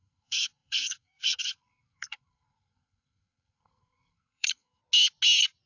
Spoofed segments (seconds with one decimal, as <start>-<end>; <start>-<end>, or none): 0.0-4.8